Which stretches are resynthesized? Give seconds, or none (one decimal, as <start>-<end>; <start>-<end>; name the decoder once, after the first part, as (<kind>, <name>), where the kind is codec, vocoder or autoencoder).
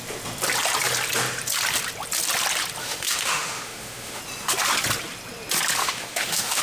2.8-4.2 (autoencoder, DAC-VAE); 5.8-6.6